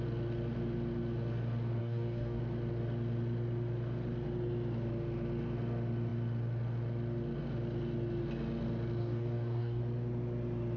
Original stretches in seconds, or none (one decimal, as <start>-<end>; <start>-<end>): 0.0-1.8; 2.4-9.0; 9.8-10.8